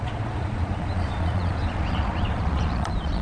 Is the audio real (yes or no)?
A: no